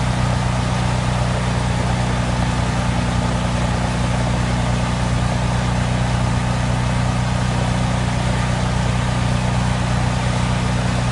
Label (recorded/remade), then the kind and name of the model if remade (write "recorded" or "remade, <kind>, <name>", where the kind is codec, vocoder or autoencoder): recorded